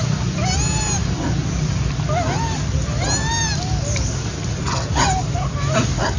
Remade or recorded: recorded